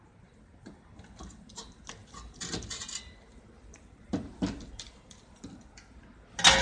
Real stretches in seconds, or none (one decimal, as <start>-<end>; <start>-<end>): 0.0-2.0; 6.0-6.6